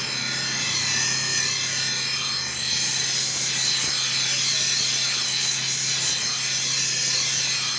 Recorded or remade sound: recorded